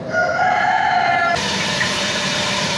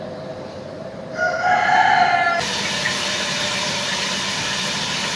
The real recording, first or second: second